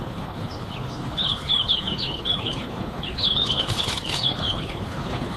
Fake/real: fake